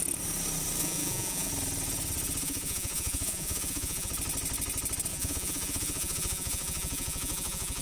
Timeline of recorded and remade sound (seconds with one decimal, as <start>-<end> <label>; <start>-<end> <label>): 0.0-0.8 recorded; 0.8-1.5 remade; 1.5-2.4 recorded; 2.4-4.1 remade; 4.1-5.1 recorded; 5.1-7.8 remade